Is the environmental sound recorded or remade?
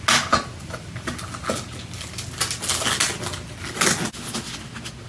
recorded